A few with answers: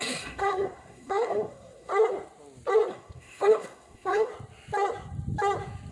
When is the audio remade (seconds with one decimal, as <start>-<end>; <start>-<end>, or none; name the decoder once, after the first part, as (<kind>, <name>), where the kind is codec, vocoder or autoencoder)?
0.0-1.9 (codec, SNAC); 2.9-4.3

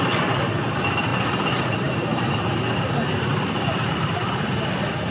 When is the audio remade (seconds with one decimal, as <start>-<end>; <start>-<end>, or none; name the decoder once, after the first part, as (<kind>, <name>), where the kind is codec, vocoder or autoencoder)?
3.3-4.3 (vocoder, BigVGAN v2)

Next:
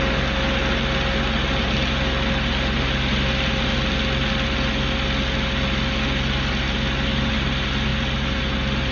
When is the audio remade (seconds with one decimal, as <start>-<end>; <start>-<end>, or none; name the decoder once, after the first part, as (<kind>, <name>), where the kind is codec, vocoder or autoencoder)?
none